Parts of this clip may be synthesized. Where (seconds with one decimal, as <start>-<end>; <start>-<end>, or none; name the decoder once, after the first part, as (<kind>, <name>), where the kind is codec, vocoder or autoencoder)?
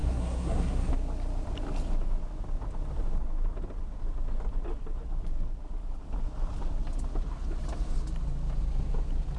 0.0-0.9 (codec, SNAC)